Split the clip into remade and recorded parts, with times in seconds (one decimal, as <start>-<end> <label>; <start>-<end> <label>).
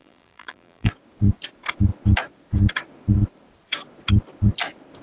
0.0-0.9 remade; 0.9-5.0 recorded